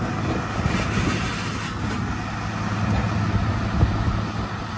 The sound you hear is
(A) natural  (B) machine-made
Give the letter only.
A